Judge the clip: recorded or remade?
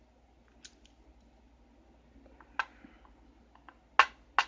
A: recorded